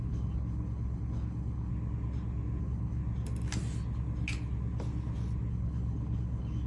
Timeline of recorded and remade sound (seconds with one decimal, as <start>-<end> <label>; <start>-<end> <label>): 0.0-1.7 remade; 1.7-2.6 recorded; 2.6-3.0 remade; 3.0-5.5 recorded; 5.5-6.7 remade